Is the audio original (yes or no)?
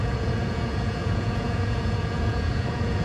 no